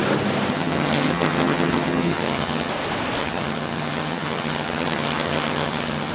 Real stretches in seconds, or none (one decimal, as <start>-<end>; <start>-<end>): 0.0-0.5; 2.7-3.2